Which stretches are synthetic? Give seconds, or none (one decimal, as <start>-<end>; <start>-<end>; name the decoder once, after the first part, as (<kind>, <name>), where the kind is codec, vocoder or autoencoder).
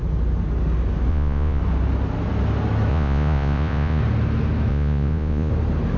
1.1-1.6 (vocoder, Vocos); 2.9-4.0; 4.7-5.5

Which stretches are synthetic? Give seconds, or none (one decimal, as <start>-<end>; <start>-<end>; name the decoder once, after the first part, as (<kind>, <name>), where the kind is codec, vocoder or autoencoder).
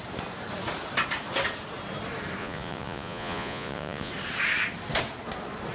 2.4-4.1 (vocoder, Vocos)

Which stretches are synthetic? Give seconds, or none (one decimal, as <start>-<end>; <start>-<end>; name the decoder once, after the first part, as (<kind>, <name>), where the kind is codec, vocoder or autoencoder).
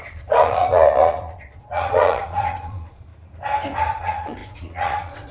0.0-3.1 (vocoder, Vocos); 4.0-5.3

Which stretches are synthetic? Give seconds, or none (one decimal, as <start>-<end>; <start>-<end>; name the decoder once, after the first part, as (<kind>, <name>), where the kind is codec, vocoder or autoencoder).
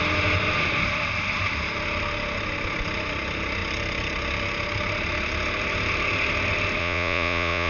6.8-7.7 (vocoder, Vocos)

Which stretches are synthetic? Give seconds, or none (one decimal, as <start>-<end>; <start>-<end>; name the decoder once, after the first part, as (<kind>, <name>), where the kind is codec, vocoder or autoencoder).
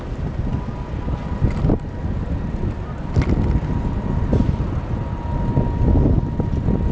none